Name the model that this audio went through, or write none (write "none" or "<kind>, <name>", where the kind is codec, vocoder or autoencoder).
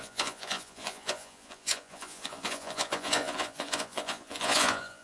vocoder, Vocos